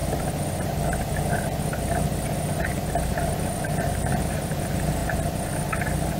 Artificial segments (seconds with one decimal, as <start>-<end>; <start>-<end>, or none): 3.7-6.2